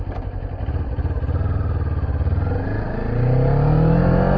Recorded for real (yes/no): yes